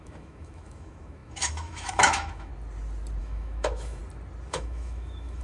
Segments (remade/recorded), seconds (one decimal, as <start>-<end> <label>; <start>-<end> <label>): 0.0-2.5 remade; 2.5-3.2 recorded; 3.2-4.0 remade; 4.0-4.5 recorded; 4.5-5.4 remade